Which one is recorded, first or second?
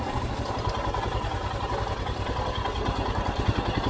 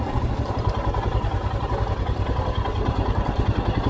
first